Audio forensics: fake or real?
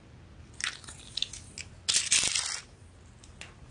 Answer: real